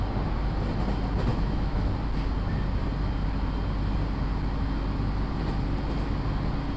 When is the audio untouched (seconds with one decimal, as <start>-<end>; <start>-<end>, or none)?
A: 0.0-1.3; 1.9-6.8